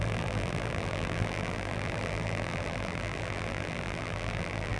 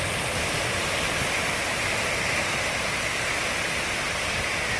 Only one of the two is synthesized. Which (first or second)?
first